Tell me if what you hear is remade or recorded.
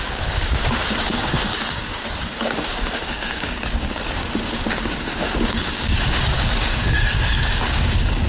remade